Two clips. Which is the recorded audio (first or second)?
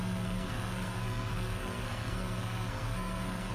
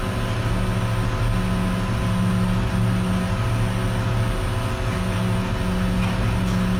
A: second